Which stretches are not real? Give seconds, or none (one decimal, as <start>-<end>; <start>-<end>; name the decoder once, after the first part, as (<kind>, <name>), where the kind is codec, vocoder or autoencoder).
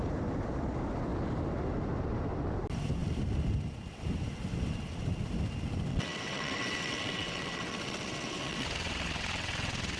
5.9-10.0 (vocoder, WaveNeXt)